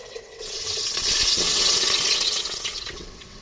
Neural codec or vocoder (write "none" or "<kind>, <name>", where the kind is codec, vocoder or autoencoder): vocoder, WaveNeXt